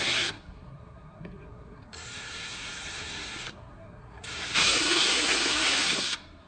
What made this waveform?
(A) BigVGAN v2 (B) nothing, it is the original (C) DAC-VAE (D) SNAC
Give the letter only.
D